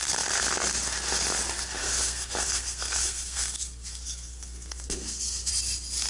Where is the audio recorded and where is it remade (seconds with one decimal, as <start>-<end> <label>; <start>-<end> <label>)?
0.0-1.8 recorded; 1.8-5.5 remade; 5.5-6.1 recorded